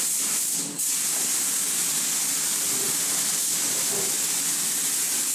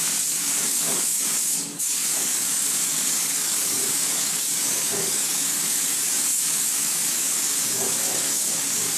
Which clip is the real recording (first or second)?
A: first